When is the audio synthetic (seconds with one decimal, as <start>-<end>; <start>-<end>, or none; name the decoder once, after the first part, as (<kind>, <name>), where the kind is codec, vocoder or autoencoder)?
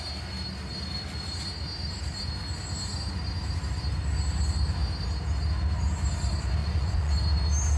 6.6-7.1 (vocoder, Vocos)